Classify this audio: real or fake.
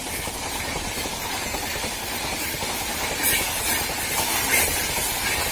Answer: fake